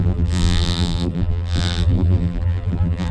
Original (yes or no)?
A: no